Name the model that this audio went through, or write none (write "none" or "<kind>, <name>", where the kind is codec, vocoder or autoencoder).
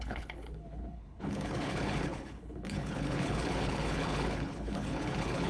codec, HILCodec